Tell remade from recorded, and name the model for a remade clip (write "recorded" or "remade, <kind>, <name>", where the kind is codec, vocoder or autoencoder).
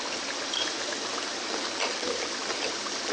recorded